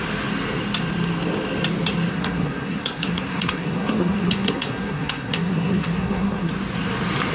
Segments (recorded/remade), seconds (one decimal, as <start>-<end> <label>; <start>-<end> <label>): 0.0-2.1 recorded; 2.1-6.5 remade; 6.5-7.3 recorded